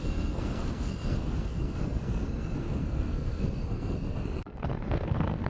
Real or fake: fake